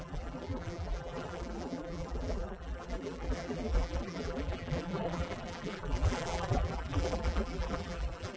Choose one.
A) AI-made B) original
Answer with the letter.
A